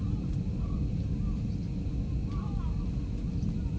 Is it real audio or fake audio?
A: real